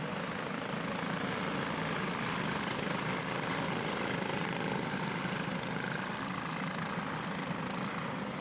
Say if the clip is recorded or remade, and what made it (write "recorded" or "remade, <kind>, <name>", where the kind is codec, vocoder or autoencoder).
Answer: recorded